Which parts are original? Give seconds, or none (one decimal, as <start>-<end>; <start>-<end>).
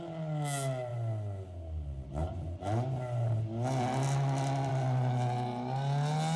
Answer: 0.0-6.4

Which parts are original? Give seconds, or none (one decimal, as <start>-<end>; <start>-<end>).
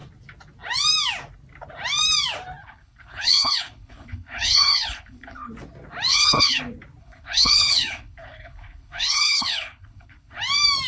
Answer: 0.0-2.6; 5.5-6.1; 6.6-7.0; 10.4-10.9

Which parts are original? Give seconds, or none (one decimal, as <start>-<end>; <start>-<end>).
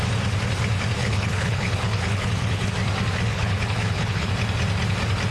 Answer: 0.0-1.0; 2.7-3.3; 4.3-5.3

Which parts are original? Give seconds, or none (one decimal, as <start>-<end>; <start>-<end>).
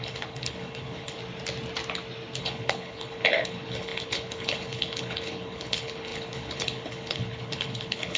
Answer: 1.2-2.4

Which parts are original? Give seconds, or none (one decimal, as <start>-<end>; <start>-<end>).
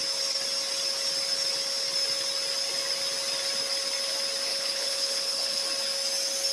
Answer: 0.0-4.5; 5.6-6.5